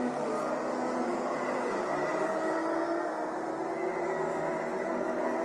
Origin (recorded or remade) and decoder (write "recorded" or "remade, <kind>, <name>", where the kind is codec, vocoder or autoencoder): recorded